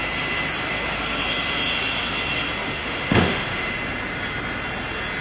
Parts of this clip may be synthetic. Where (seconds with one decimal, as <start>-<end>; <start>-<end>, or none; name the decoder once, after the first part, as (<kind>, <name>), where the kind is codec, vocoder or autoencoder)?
2.6-3.7 (autoencoder, DAC-VAE)